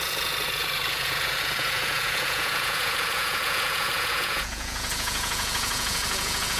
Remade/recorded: remade